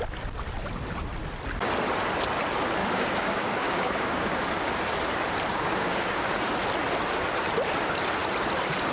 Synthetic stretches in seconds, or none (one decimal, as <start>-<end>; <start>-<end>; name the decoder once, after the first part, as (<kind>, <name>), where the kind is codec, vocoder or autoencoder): 2.8-4.7 (codec, DAC); 5.5-6.3